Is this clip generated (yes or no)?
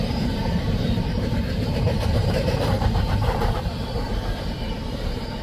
yes